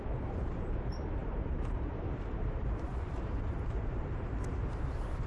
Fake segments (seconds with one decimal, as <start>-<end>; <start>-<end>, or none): 0.0-5.3